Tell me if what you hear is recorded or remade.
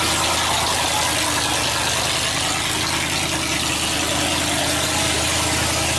recorded